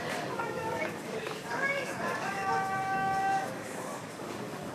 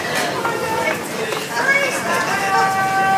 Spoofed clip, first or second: first